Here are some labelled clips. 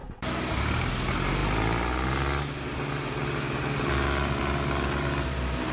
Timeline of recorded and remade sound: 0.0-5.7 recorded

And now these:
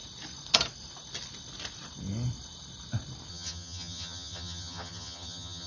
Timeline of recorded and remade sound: 0.0-3.3 recorded; 3.3-5.7 remade

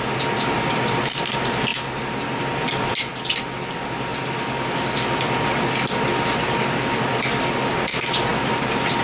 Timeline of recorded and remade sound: 0.0-9.0 recorded

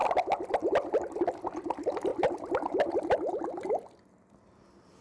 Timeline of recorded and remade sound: 0.0-5.0 recorded

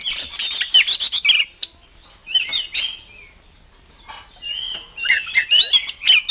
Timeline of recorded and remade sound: 0.0-6.3 recorded